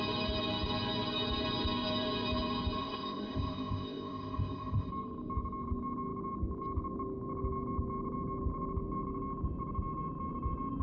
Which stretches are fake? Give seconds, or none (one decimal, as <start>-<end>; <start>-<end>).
2.8-4.9